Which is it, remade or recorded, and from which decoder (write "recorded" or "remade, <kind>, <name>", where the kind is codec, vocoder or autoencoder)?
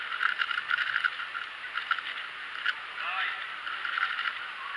recorded